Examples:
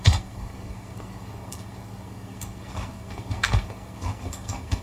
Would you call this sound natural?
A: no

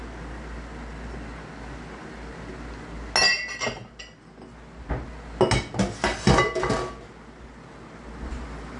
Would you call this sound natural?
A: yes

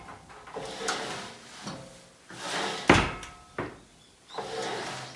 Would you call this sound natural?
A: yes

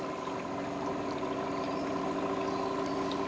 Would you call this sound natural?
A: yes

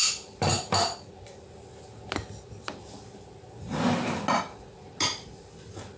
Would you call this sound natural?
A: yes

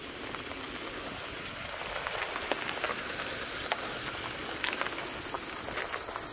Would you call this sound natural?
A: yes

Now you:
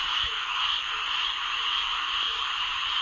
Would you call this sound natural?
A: no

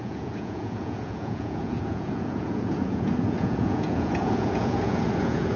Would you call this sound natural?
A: no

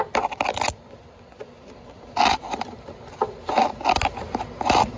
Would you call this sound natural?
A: yes